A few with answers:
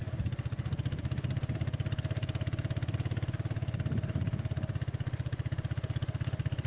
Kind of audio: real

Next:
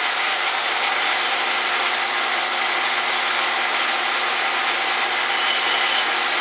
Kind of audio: real